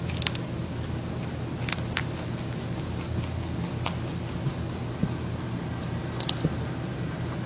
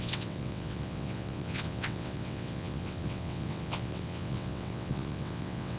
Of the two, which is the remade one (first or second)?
second